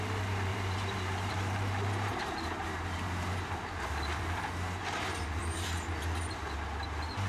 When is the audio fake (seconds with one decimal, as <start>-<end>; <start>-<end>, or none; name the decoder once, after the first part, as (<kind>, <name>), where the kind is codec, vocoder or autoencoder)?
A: 0.5-4.4 (vocoder, BigVGAN v2); 5.4-6.0